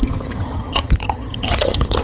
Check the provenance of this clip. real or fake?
fake